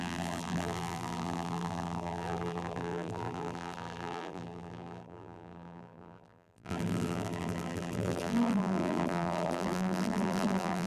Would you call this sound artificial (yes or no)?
yes